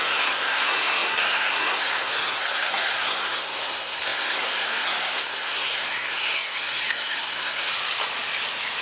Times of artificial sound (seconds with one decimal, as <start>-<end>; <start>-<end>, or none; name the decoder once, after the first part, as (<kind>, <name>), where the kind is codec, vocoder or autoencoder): 0.0-7.7 (codec, SNAC)